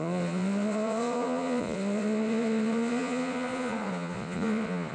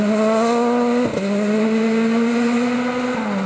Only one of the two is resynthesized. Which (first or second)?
first